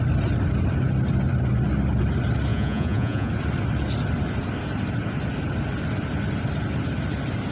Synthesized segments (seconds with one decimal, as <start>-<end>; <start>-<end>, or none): 2.5-3.3